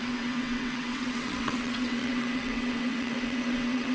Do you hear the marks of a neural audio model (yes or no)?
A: yes